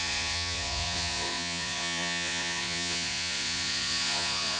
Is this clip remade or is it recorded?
remade